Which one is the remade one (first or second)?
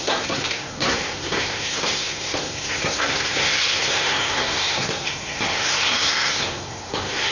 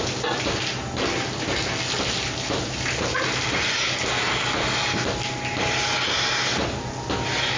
first